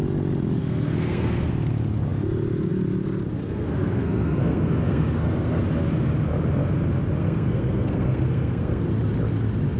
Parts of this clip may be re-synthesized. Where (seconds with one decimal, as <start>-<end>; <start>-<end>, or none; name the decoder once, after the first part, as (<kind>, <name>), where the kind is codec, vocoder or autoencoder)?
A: 0.6-1.5 (codec, SNAC); 3.4-5.6; 7.2-8.8